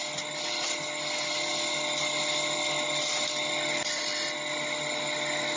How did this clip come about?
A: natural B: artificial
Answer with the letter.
A